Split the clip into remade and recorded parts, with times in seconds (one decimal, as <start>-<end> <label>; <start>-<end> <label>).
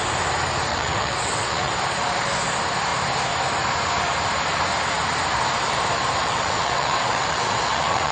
0.0-0.7 recorded; 0.7-1.7 remade; 1.7-6.2 recorded; 6.2-8.1 remade